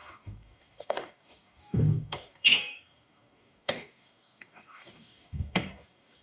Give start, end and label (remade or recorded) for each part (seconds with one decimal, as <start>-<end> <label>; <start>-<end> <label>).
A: 0.0-6.2 remade